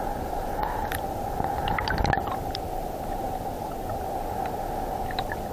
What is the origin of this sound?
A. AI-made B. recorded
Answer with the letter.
B